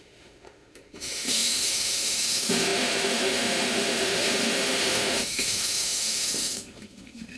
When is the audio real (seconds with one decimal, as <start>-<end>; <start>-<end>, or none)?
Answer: none